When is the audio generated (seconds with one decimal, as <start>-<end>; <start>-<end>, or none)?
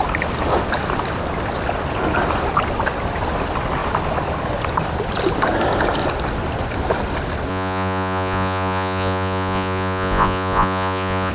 7.5-11.3